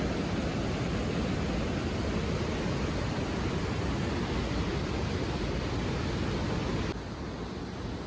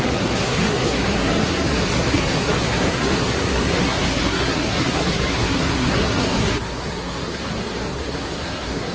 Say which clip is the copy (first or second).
second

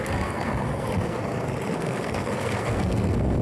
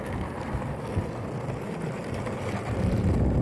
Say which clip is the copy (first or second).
first